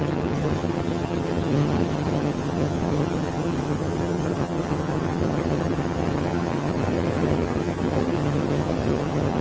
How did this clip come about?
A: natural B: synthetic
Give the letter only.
B